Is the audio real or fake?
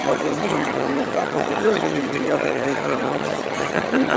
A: fake